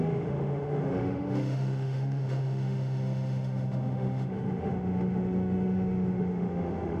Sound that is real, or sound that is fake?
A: fake